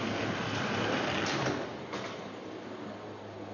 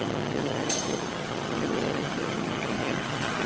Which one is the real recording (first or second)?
first